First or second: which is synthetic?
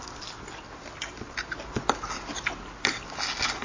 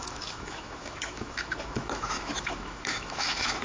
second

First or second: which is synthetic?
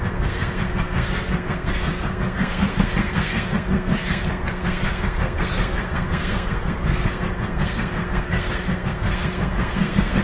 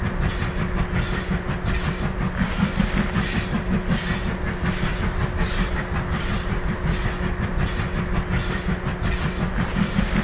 first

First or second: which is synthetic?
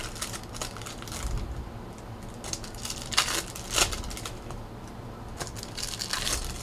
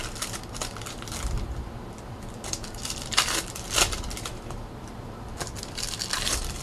second